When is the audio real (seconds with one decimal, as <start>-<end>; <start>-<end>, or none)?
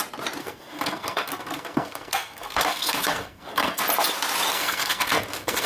0.0-0.4; 3.8-4.5